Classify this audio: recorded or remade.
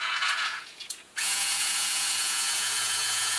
remade